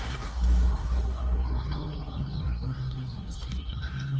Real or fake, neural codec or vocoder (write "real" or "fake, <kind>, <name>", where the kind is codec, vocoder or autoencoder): fake, codec, SNAC